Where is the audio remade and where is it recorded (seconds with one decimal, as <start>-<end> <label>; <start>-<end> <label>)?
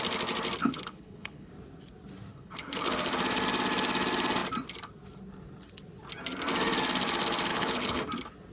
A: 0.0-0.6 recorded; 0.6-1.5 remade; 1.5-2.3 recorded; 2.3-2.9 remade; 2.9-7.5 recorded; 7.5-8.0 remade; 8.0-8.5 recorded